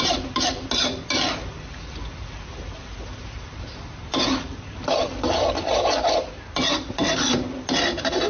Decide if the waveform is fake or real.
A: real